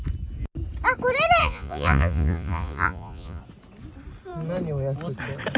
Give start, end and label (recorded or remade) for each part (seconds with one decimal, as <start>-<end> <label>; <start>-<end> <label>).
0.0-1.4 recorded; 1.4-3.4 remade; 3.4-5.6 recorded